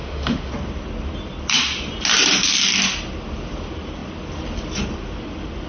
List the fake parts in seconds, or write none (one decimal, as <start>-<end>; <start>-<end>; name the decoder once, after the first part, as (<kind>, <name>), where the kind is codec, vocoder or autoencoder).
0.0-0.5 (autoencoder, DAC-VAE)